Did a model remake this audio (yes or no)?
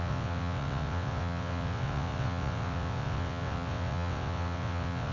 yes